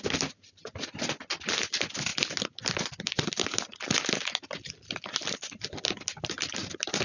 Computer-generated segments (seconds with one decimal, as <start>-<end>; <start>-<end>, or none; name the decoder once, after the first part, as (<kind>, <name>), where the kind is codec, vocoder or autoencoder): none